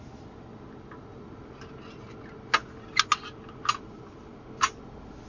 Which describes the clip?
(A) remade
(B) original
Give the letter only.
B